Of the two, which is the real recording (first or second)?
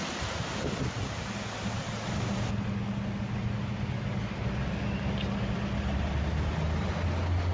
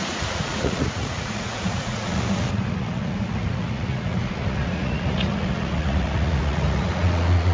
first